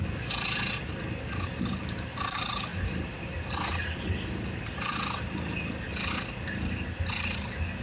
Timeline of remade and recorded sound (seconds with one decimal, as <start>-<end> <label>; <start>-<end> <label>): 0.0-7.8 recorded